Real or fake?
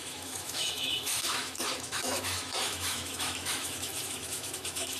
fake